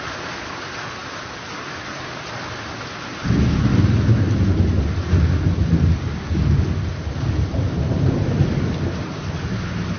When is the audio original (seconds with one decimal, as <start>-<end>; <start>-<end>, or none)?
0.0-10.0